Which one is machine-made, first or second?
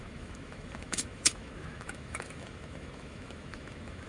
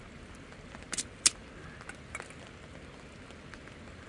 first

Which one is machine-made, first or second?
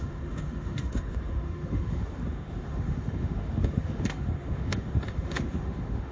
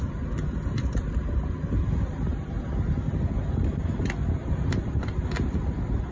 first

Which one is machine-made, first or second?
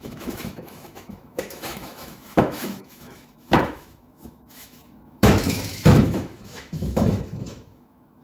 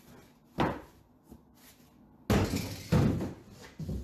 first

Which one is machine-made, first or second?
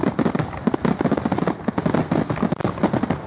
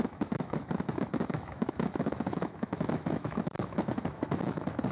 second